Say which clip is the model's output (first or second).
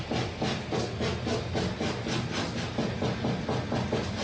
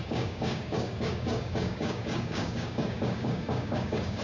second